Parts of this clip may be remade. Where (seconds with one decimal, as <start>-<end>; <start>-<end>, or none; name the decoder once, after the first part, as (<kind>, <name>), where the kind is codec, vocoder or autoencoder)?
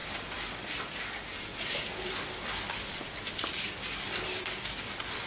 none